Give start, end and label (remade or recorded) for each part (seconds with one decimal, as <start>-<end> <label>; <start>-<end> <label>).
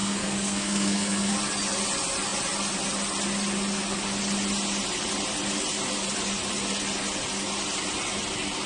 0.0-1.3 remade; 1.3-8.7 recorded